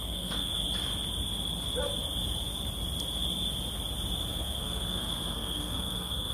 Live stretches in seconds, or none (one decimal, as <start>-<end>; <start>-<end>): 0.5-4.3